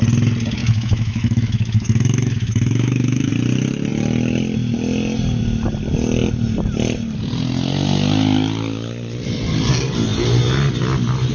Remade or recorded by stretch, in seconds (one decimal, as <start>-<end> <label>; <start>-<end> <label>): 0.0-0.6 recorded; 0.6-3.3 remade; 3.3-11.3 recorded